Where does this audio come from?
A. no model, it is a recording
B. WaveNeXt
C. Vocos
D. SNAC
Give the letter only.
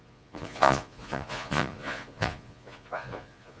C